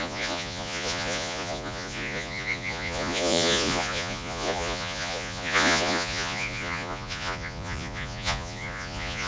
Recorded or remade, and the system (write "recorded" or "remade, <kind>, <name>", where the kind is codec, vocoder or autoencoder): remade, vocoder, Vocos